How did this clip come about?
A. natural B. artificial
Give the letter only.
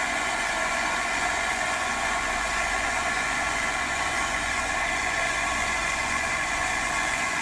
B